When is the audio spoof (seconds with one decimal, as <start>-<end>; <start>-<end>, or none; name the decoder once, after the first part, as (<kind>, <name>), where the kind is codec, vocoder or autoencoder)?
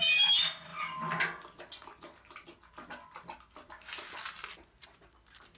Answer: none